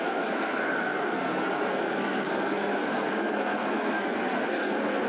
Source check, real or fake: fake